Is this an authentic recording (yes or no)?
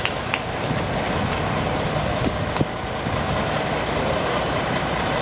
yes